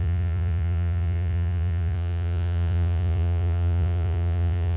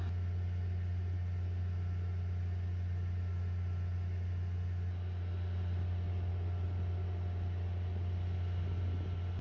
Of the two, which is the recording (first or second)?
second